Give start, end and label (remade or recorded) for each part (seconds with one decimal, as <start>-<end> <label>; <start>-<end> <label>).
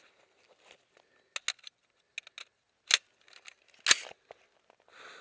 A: 0.0-5.2 recorded